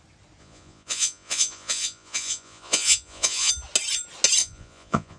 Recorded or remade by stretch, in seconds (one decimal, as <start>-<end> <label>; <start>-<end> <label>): 0.0-0.4 recorded; 0.4-3.5 remade; 3.5-4.4 recorded; 4.4-5.2 remade